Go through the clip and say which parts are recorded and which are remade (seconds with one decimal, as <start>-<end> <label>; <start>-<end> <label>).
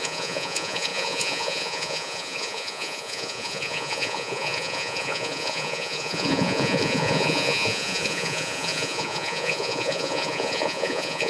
0.0-11.3 remade